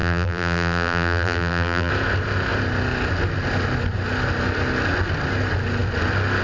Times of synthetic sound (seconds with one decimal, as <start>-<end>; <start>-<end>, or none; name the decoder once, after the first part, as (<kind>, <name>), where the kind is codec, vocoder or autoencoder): 0.0-1.9 (vocoder, BigVGAN v2)